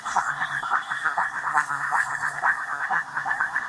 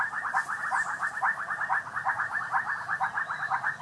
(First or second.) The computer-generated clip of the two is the first